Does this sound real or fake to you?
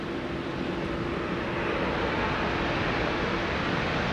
real